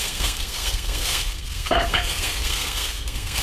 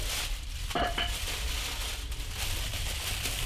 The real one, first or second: second